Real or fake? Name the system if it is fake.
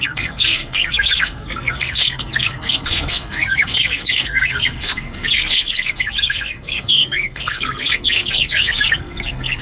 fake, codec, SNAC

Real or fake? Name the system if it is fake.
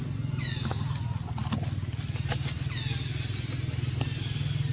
real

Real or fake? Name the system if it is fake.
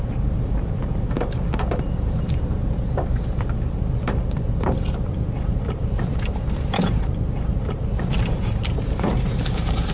fake, vocoder, BigVGAN v2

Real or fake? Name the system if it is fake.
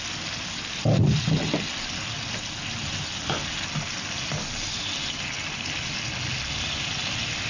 real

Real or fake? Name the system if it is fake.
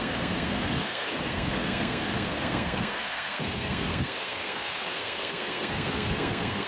fake, codec, SNAC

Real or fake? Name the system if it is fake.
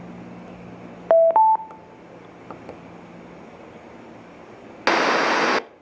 real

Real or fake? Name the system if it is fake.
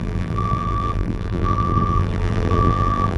fake, vocoder, BigVGAN v2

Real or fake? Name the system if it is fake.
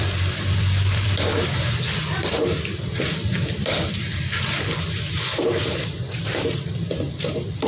fake, vocoder, BigVGAN v2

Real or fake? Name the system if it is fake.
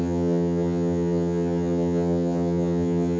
fake, vocoder, HiFi-GAN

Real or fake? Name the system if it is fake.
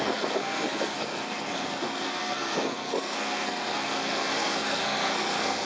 fake, codec, SNAC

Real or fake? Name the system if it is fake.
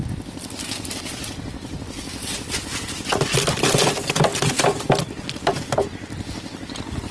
real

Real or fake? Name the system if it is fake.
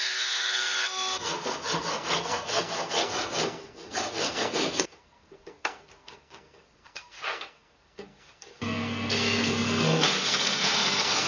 fake, codec, SNAC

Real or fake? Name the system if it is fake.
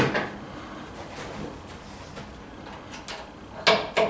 real